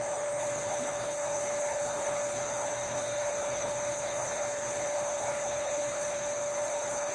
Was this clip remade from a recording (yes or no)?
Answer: yes